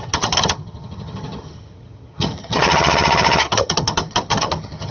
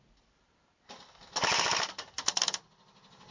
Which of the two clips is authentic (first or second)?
second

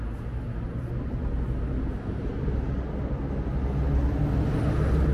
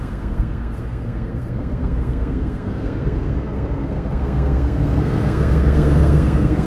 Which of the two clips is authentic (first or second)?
first